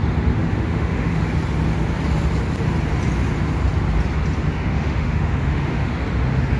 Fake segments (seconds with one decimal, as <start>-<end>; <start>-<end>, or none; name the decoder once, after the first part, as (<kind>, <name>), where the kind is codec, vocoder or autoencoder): 0.4-1.2 (autoencoder, DAC-VAE); 4.5-5.9